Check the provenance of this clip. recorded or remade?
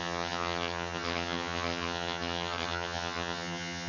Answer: remade